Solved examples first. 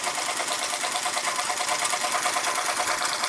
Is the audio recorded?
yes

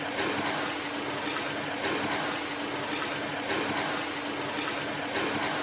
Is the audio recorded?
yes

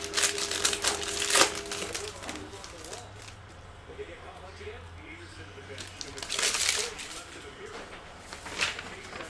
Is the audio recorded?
yes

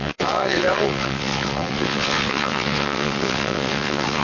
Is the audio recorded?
no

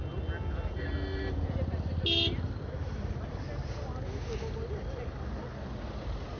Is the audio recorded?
yes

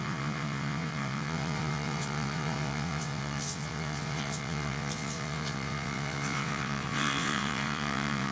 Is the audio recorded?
no